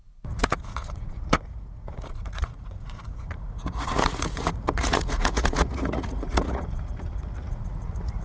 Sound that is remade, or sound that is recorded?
remade